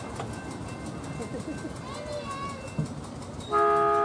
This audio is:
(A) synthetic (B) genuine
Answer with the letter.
B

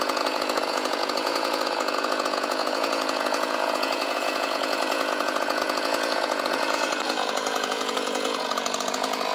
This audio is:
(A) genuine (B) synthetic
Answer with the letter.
B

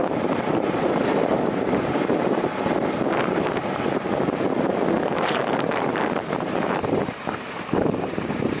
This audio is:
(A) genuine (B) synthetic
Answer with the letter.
B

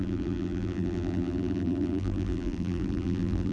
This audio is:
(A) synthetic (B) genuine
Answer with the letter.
A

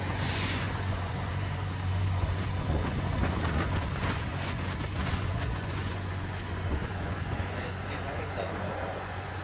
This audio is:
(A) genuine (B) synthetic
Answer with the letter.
B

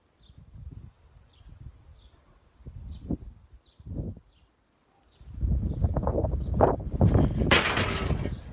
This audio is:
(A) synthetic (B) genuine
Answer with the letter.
B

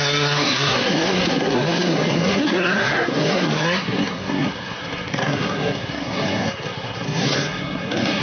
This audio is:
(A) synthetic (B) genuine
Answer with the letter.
A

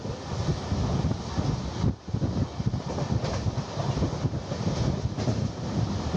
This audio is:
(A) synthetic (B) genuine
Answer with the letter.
B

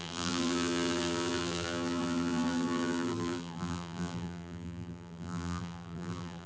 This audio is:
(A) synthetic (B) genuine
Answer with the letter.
A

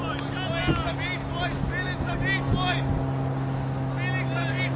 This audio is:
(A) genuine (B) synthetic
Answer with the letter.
A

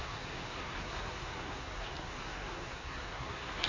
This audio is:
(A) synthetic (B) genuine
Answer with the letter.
A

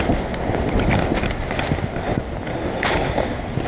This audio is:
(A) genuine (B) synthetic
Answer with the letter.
A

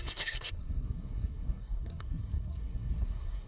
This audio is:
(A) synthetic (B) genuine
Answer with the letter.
A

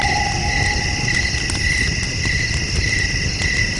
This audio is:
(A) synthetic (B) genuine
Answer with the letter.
B